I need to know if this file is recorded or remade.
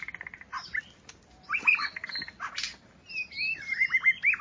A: recorded